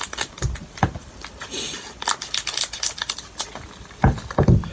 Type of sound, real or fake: real